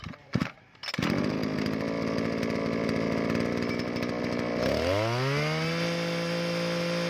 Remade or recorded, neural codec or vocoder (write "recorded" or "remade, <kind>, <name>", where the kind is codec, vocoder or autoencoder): recorded